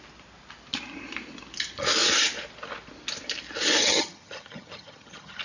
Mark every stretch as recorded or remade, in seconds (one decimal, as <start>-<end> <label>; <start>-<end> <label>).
0.0-3.8 recorded; 3.8-5.4 remade